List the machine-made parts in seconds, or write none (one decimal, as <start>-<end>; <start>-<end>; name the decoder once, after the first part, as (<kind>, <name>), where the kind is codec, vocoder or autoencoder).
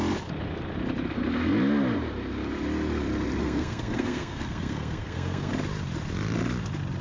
3.4-5.5 (codec, SNAC)